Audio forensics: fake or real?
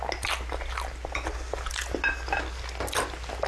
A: real